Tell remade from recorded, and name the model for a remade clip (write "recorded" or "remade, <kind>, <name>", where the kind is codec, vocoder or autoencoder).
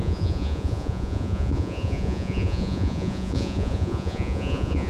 remade, vocoder, Vocos